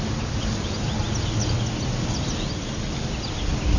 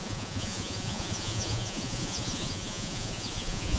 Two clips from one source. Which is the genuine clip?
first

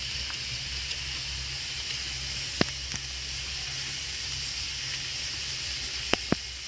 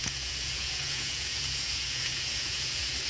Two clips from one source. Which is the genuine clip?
first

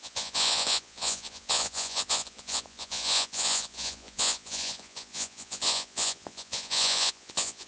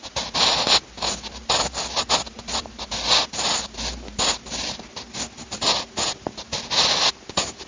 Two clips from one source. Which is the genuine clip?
second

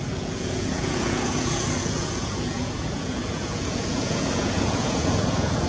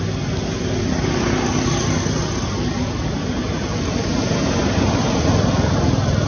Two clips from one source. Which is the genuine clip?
second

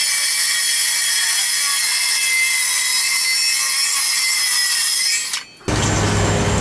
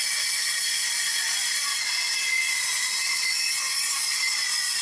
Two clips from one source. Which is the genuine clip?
first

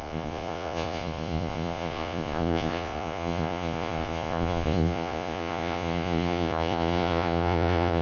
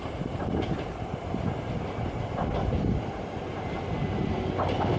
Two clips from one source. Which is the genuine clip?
second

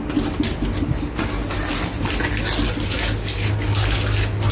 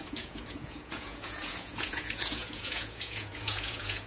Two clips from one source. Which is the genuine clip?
first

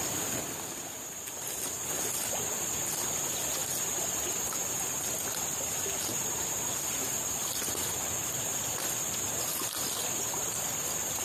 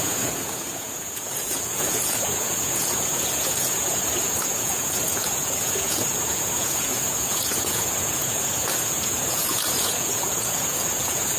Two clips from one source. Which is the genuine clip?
first